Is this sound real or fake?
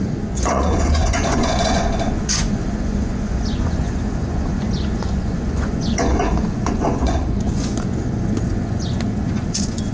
fake